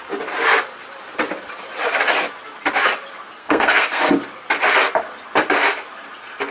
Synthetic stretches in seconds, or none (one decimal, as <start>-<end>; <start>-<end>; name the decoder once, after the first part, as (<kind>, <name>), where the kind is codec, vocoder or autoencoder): 3.4-4.0 (codec, SNAC)